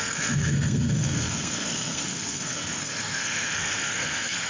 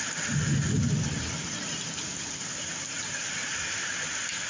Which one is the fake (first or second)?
first